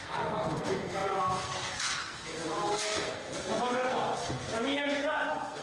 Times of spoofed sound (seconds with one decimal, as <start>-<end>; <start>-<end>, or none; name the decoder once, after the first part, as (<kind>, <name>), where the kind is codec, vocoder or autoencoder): 0.0-5.6 (codec, SNAC)